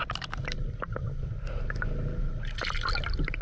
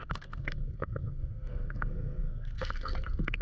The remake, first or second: second